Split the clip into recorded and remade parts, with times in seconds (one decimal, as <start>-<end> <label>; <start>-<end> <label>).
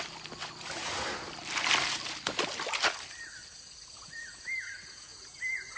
0.0-5.8 recorded